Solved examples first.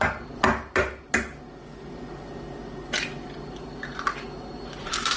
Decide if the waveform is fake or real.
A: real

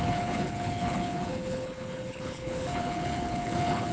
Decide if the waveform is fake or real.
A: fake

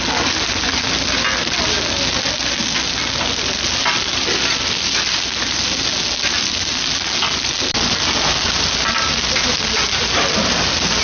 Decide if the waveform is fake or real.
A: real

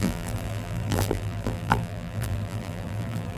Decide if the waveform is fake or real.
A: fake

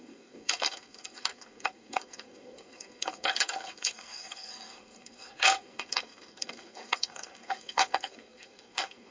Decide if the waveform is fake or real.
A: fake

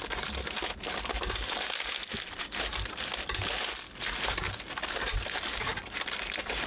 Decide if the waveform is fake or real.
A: real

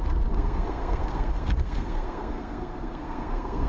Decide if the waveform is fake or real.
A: fake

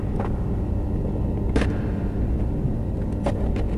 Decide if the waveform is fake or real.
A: real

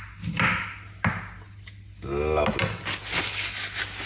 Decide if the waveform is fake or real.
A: real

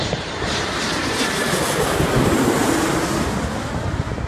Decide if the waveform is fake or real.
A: real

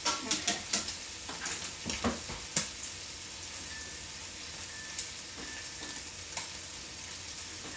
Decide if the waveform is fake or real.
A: real